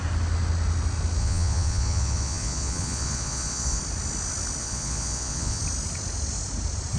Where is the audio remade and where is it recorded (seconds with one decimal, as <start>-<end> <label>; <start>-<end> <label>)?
0.0-1.2 recorded; 1.2-3.8 remade; 3.8-4.6 recorded; 4.6-5.6 remade; 5.6-7.0 recorded